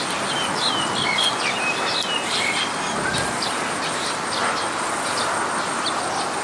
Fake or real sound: real